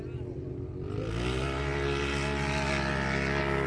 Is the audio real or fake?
real